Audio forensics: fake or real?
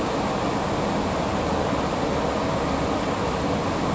real